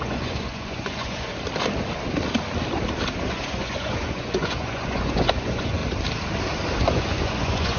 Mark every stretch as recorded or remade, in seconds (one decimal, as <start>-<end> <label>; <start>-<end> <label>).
0.0-1.3 remade; 1.3-3.3 recorded; 3.3-5.8 remade; 5.8-6.8 recorded; 6.8-7.8 remade